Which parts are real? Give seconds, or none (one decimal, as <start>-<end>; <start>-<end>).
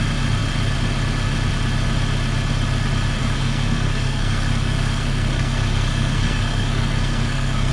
0.0-3.2